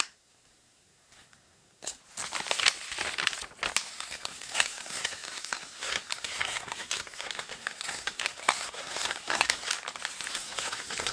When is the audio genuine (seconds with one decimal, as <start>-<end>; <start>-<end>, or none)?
2.0-3.9; 9.7-10.3